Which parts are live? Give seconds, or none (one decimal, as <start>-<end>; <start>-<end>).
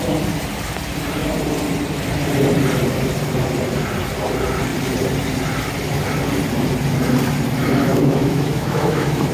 0.0-7.9